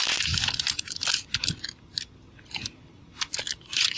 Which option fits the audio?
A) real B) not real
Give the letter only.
A